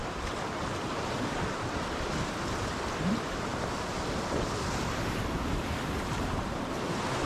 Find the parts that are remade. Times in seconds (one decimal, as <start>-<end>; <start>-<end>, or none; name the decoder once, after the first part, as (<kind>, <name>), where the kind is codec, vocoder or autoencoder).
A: none